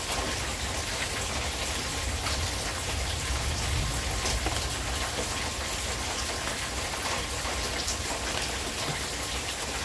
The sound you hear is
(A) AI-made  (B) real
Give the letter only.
B